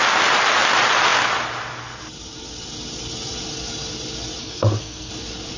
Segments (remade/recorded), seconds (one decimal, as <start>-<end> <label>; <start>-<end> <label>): 0.0-4.4 recorded; 4.4-5.1 remade; 5.1-5.6 recorded